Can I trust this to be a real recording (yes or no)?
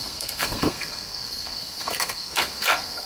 no